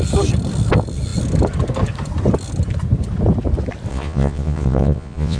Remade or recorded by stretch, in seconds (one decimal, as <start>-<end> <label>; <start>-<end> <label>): 0.0-3.9 recorded; 3.9-5.4 remade